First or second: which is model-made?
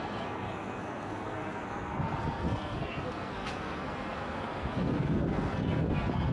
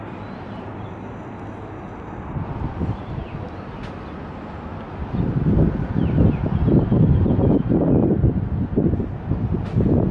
first